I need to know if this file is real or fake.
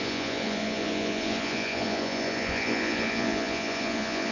fake